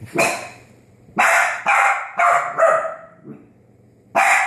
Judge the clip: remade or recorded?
recorded